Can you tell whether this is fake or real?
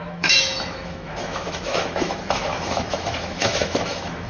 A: fake